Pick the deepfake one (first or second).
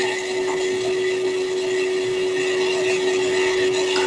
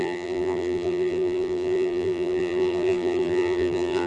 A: second